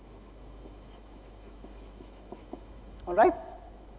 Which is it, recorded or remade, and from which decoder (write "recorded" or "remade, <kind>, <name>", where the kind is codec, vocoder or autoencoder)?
remade, autoencoder, DAC-VAE